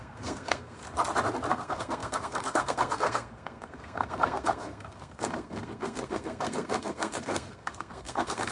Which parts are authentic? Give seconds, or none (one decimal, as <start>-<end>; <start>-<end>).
0.8-1.5